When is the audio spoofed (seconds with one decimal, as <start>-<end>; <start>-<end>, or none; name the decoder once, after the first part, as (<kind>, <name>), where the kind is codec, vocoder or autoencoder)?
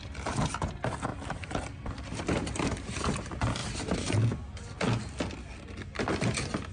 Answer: 1.1-2.2 (vocoder, BigVGAN v2)